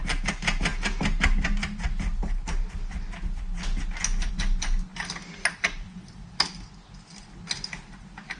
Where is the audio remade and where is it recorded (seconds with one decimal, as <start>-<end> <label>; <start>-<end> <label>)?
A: 0.0-8.4 recorded